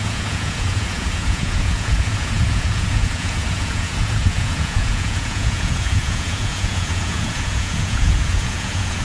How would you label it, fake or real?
fake